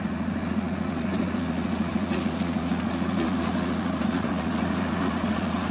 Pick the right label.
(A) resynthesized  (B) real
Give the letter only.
A